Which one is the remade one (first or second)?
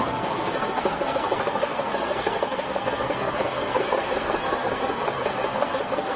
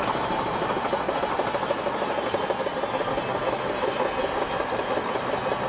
first